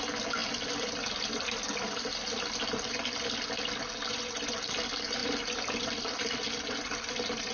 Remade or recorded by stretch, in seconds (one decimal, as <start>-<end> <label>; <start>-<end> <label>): 0.0-5.2 recorded; 5.2-6.3 remade; 6.3-7.5 recorded